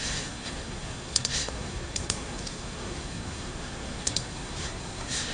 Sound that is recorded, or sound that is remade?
remade